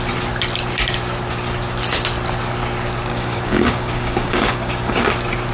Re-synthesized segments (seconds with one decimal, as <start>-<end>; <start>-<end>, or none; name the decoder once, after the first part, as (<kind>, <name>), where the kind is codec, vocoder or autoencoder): 3.1-5.1 (codec, DAC)

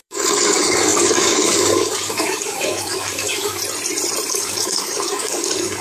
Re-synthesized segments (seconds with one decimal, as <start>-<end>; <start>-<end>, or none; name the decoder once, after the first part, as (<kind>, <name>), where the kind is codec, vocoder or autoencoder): 0.0-3.6 (codec, DAC); 4.3-5.8